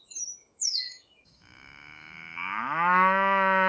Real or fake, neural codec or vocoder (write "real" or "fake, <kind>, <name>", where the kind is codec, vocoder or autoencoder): fake, autoencoder, DAC-VAE